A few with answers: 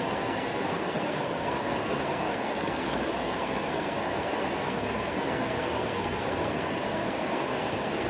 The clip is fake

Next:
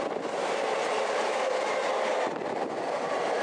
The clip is real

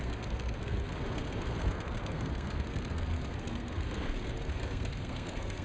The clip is fake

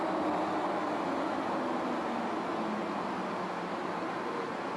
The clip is real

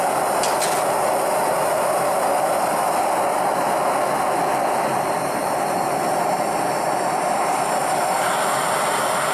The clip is real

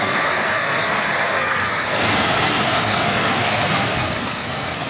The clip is fake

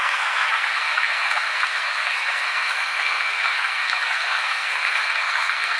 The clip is fake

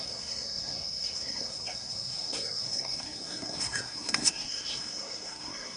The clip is fake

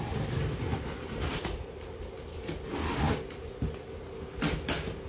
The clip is real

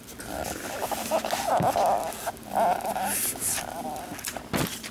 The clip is real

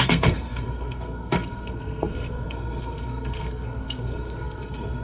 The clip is fake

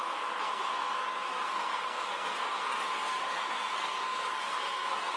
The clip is fake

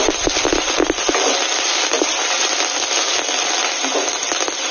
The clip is real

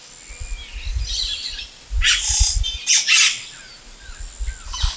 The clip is real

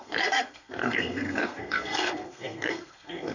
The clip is fake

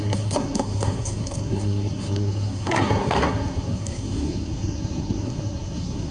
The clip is fake